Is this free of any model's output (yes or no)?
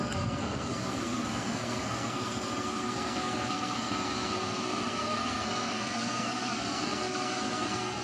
no